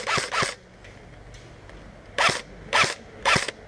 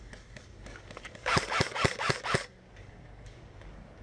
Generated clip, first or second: second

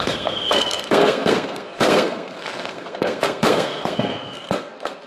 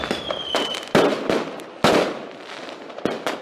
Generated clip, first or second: first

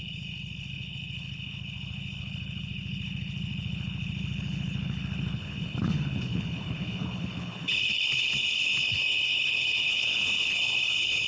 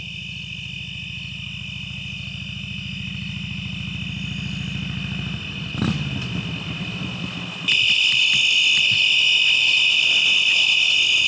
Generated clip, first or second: first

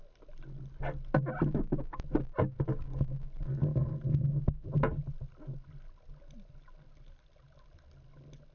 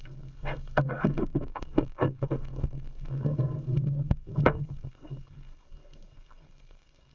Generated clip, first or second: second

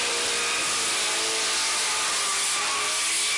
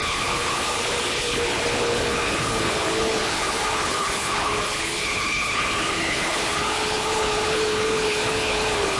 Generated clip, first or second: second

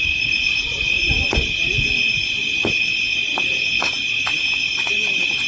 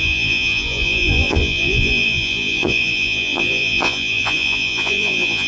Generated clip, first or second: second